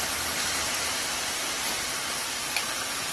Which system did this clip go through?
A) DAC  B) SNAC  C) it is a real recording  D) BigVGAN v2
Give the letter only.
D